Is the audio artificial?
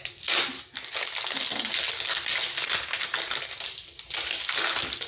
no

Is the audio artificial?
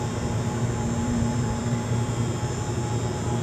yes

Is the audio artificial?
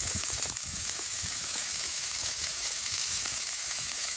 yes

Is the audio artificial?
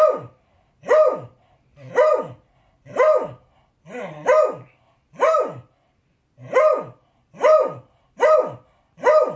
no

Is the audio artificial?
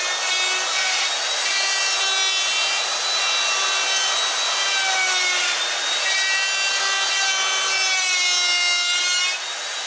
no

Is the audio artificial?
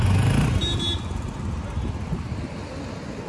no